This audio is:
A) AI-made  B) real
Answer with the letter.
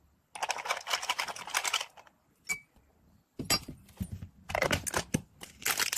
B